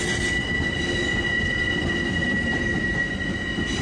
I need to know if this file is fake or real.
real